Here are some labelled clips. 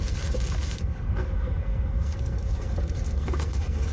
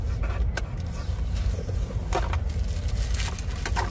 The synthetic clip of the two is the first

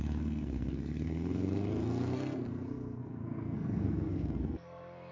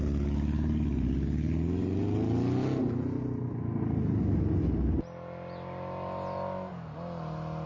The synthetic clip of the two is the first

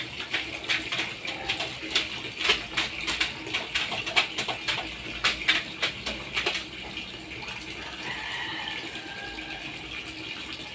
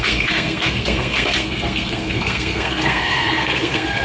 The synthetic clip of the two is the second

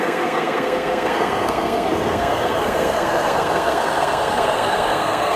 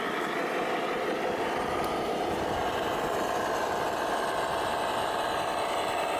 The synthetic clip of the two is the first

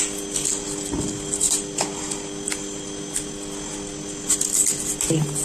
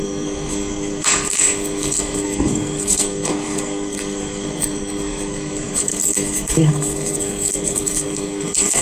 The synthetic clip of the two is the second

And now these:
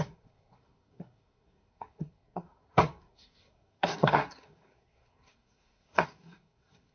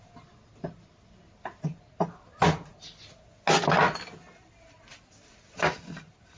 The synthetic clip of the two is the first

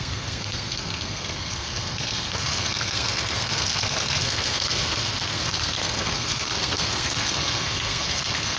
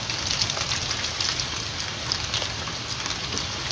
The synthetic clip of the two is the first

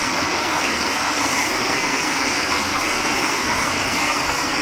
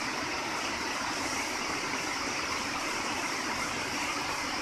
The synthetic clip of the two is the first